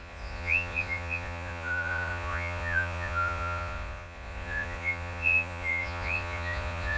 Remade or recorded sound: remade